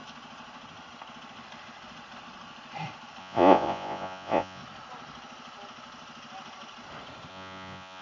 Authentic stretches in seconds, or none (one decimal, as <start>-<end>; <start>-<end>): 0.0-3.2; 4.6-7.3